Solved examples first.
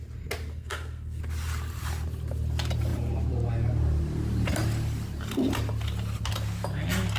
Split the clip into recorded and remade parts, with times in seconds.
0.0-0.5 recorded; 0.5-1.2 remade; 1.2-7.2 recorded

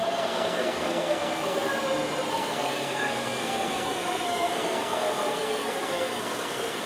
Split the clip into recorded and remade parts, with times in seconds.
0.0-1.7 remade; 1.7-2.3 recorded; 2.3-6.9 remade

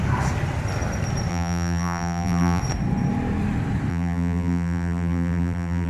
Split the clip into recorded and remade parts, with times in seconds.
0.0-1.3 recorded; 1.3-2.6 remade; 2.6-3.9 recorded; 3.9-5.9 remade

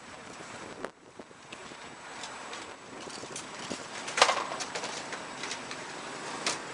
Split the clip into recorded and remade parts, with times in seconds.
0.0-6.7 remade